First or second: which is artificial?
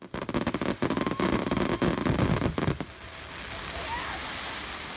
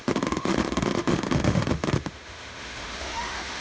second